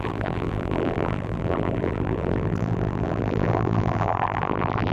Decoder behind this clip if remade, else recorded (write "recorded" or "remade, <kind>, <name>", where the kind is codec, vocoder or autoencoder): remade, vocoder, BigVGAN v2